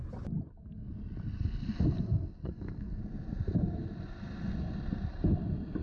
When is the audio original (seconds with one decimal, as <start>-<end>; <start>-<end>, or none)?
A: 0.0-2.4; 3.0-5.8